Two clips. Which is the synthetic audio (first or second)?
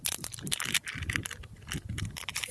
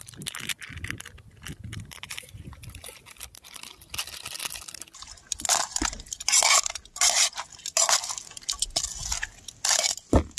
first